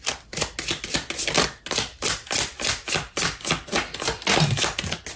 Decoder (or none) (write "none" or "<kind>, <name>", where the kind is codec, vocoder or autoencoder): none